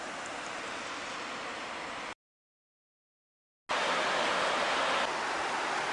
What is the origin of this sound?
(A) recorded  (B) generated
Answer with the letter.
A